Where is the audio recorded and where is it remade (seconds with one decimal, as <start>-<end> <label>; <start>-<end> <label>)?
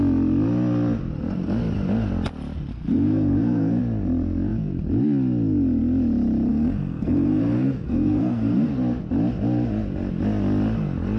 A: 0.0-2.7 recorded; 2.7-3.8 remade; 3.8-6.5 recorded; 6.5-8.7 remade; 8.7-11.2 recorded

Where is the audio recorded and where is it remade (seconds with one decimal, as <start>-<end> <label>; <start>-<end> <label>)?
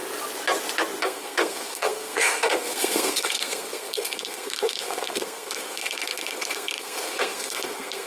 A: 0.0-1.0 recorded; 1.0-8.1 remade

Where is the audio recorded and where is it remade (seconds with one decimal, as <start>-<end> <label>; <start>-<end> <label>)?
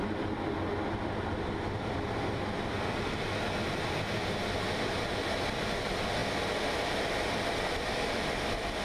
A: 0.0-8.8 recorded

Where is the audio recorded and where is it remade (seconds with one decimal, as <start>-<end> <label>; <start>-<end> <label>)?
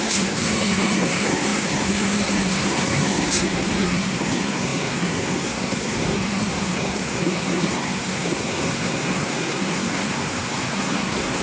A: 0.0-11.4 remade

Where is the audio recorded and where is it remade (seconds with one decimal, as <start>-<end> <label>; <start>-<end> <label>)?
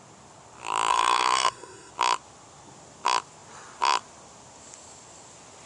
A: 0.0-0.9 recorded; 0.9-1.9 remade; 1.9-5.7 recorded